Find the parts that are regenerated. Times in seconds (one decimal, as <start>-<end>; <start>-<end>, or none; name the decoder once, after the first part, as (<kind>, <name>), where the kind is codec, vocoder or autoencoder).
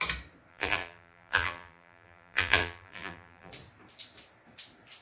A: 0.5-3.5 (vocoder, BigVGAN v2)